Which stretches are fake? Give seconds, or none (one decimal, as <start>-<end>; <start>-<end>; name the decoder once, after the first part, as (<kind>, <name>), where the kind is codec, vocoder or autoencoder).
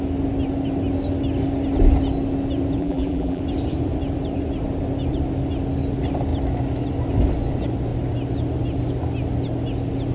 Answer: 2.8-3.4 (vocoder, BigVGAN v2)